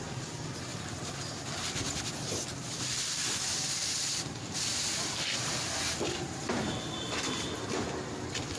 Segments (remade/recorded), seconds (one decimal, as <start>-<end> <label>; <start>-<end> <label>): 0.0-8.6 recorded

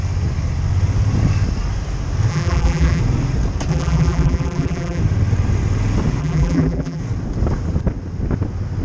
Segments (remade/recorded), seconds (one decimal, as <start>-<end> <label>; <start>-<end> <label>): 0.0-2.3 recorded; 2.3-3.0 remade; 3.0-3.7 recorded; 3.7-5.0 remade; 5.0-6.2 recorded; 6.2-7.0 remade; 7.0-8.8 recorded

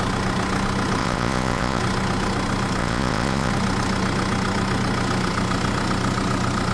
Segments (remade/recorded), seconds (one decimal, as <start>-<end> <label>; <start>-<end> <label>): 0.0-1.0 recorded; 1.0-1.8 remade; 1.8-2.8 recorded; 2.8-3.5 remade; 3.5-6.7 recorded

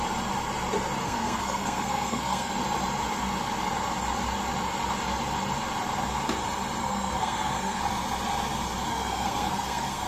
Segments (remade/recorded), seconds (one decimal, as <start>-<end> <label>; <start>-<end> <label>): 0.0-1.0 recorded; 1.0-2.5 remade; 2.5-6.8 recorded; 6.8-7.8 remade; 7.8-8.9 recorded; 8.9-10.1 remade

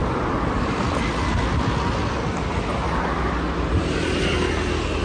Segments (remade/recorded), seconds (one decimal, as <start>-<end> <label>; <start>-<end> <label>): 0.0-5.0 recorded

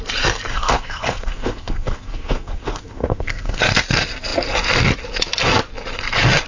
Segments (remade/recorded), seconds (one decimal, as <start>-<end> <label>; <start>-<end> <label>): 0.0-0.5 recorded; 0.5-3.6 remade; 3.6-6.5 recorded

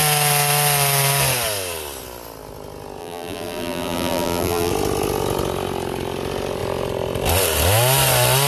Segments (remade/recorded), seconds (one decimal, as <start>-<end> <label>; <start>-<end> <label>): 0.0-3.0 recorded; 3.0-4.7 remade; 4.7-8.5 recorded

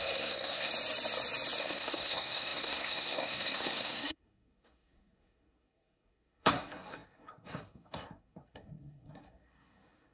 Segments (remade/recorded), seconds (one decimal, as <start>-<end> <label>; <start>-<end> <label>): 0.0-0.7 remade; 0.7-1.6 recorded; 1.6-10.1 remade